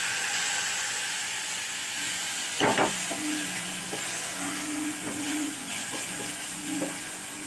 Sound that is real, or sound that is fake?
fake